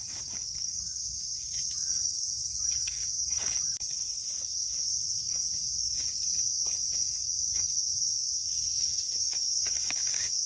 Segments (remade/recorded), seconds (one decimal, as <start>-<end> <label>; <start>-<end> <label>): 0.0-10.5 remade

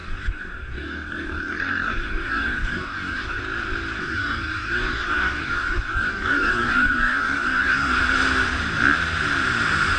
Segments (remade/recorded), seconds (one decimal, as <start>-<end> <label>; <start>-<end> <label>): 0.0-3.4 remade; 3.4-4.0 recorded; 4.0-8.0 remade; 8.0-10.0 recorded

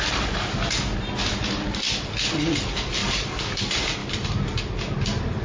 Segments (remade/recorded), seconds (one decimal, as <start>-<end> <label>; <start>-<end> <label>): 0.0-3.0 recorded; 3.0-3.6 remade; 3.6-5.4 recorded

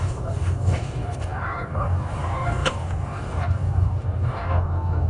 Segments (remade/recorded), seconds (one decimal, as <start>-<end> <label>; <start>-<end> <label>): 0.0-5.1 remade